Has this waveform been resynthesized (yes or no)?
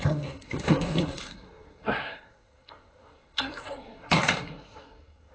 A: yes